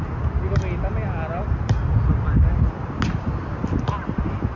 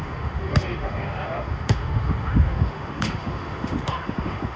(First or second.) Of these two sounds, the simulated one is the second